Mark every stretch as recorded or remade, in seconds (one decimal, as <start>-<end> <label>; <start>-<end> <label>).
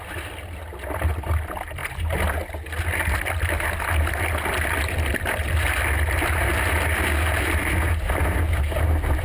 0.0-9.2 recorded